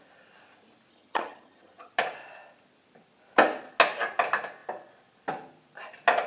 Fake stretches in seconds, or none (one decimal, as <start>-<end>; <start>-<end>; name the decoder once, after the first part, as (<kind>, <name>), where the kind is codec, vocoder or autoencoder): 0.9-1.9 (vocoder, HiFi-GAN)